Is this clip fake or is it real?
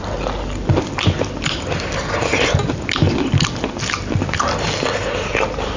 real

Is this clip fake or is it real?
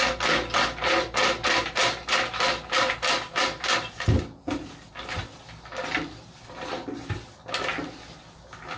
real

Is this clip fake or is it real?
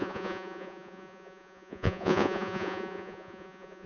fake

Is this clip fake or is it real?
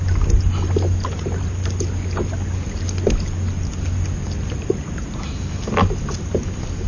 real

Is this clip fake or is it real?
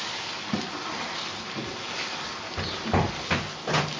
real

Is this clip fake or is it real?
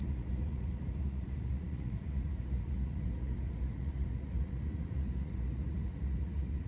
fake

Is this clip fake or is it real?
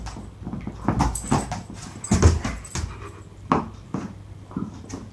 real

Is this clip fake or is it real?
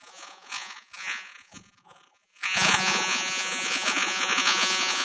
fake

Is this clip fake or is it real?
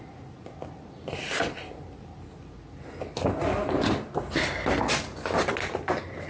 real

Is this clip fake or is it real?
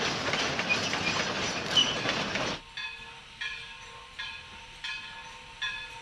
real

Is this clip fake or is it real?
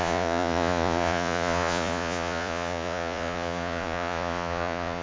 fake